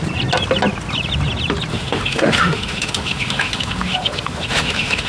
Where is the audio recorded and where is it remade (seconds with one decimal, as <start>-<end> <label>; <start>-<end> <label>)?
0.0-1.7 recorded; 1.7-5.1 remade